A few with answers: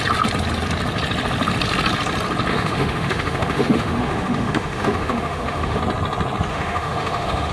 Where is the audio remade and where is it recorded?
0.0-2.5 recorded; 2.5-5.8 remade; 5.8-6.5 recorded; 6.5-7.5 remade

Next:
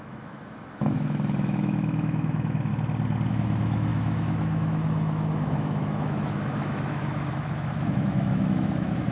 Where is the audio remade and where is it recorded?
0.0-2.7 remade; 2.7-3.3 recorded; 3.3-9.1 remade

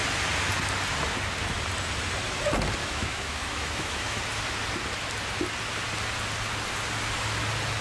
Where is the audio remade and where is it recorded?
0.0-2.8 recorded; 2.8-4.2 remade; 4.2-7.8 recorded

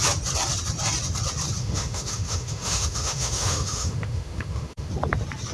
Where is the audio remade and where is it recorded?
0.0-1.6 recorded; 1.6-4.9 remade; 4.9-5.5 recorded